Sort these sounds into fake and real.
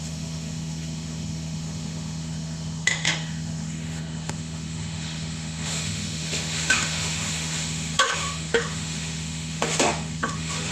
fake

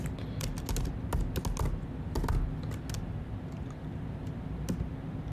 real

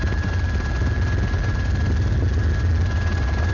real